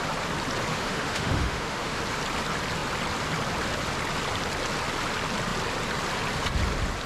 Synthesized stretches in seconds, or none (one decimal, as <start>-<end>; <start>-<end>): 0.7-2.0